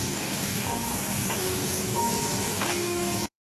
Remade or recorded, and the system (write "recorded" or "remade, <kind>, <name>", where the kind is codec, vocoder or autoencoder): remade, codec, DAC